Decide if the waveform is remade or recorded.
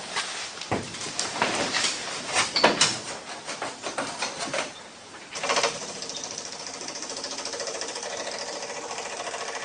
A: remade